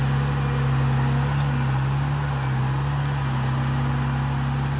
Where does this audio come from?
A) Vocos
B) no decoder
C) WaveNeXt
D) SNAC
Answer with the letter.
B